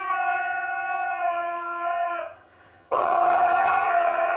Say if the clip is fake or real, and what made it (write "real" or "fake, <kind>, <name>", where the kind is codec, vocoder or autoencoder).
fake, vocoder, HiFi-GAN